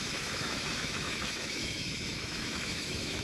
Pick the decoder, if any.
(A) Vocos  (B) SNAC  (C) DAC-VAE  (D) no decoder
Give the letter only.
C